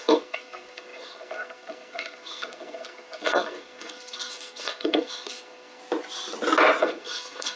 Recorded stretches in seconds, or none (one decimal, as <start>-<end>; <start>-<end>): 5.8-6.8